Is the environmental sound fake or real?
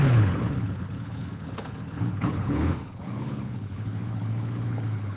fake